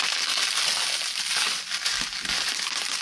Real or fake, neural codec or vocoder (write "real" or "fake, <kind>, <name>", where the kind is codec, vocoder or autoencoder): real